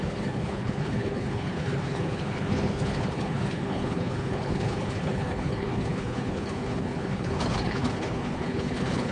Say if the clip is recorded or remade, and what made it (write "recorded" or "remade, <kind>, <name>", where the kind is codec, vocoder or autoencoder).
remade, codec, HILCodec